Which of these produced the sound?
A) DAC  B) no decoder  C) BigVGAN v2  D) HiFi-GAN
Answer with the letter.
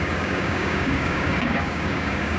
A